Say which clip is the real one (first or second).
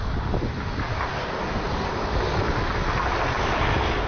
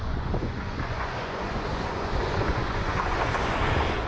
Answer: first